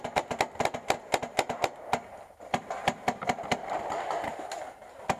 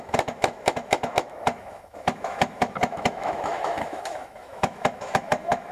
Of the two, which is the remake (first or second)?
second